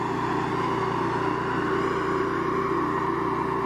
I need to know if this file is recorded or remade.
recorded